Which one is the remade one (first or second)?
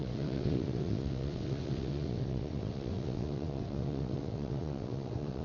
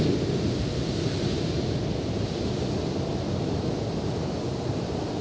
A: first